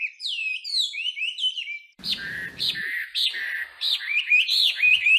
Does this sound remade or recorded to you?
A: remade